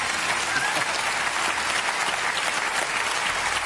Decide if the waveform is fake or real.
real